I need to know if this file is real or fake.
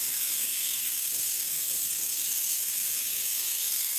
fake